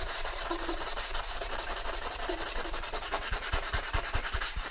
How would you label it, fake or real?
fake